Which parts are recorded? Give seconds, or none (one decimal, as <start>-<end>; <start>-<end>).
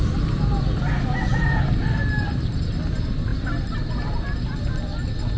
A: 0.0-5.4